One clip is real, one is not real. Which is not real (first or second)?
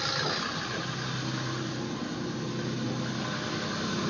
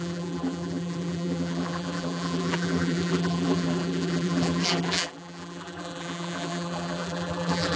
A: second